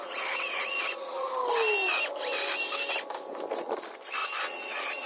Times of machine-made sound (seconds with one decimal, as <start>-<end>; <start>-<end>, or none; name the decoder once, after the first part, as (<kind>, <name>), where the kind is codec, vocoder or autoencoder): 0.0-1.3 (vocoder, Vocos); 3.6-5.1